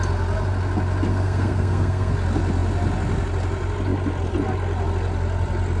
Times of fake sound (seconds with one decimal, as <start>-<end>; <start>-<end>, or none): 1.1-2.1